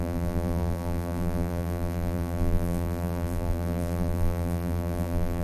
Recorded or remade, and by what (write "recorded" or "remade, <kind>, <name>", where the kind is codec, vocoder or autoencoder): remade, vocoder, BigVGAN v2